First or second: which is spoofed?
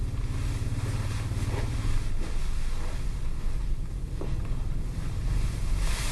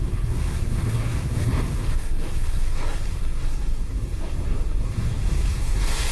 second